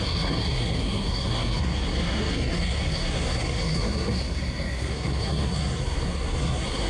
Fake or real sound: fake